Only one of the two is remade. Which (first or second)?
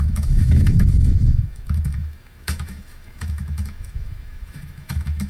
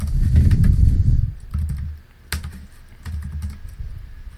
first